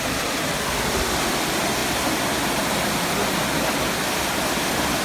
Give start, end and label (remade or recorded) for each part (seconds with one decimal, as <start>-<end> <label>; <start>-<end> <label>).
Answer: 0.0-5.0 recorded

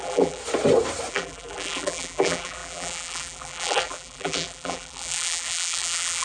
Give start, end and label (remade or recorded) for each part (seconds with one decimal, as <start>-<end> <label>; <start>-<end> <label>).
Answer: 0.0-0.4 remade; 0.4-1.1 recorded; 1.1-6.2 remade

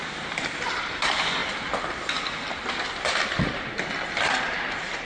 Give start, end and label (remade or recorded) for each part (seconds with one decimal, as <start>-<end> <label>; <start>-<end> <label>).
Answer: 0.0-1.4 remade; 1.4-4.3 recorded; 4.3-5.0 remade